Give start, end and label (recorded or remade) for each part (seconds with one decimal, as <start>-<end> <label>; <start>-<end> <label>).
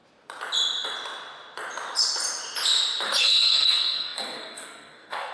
0.0-3.2 recorded; 3.2-5.3 remade